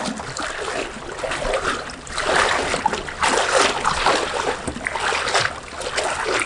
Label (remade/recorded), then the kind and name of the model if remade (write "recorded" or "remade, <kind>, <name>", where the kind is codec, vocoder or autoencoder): recorded